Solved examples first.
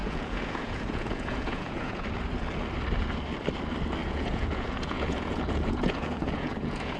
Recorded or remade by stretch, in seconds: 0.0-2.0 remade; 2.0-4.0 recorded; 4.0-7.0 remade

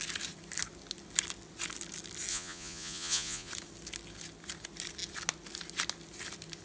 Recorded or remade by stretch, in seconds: 0.0-2.3 recorded; 2.3-3.5 remade; 3.5-6.6 recorded

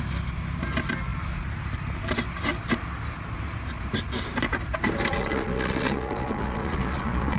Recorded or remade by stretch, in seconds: 0.0-5.1 recorded; 5.1-7.4 remade

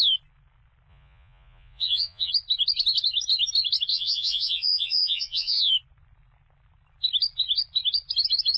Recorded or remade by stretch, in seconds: 0.0-0.9 recorded; 0.9-2.3 remade; 2.3-3.9 recorded; 3.9-5.7 remade; 5.7-8.6 recorded

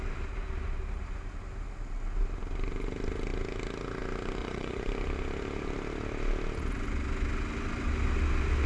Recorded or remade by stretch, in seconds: 0.0-4.4 recorded; 4.4-4.9 remade; 4.9-8.7 recorded

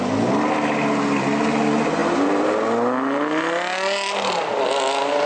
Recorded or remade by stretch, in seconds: 0.0-5.3 recorded

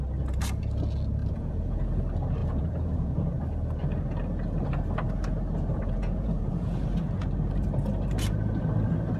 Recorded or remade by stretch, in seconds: 0.0-1.2 recorded; 1.2-2.0 remade; 2.0-2.4 recorded; 2.4-3.4 remade; 3.4-5.7 recorded; 5.7-6.8 remade; 6.8-9.2 recorded

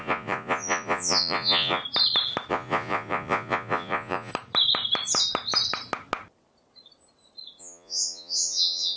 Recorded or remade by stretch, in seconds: 0.0-1.8 remade; 1.8-2.5 recorded; 2.5-4.3 remade; 4.3-7.6 recorded; 7.6-9.0 remade